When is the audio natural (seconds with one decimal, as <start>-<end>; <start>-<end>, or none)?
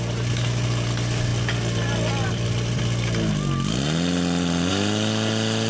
0.0-5.7